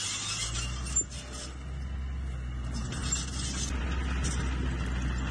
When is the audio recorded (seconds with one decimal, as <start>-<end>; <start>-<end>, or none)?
0.0-5.3